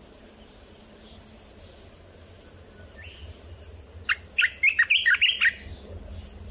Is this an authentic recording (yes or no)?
yes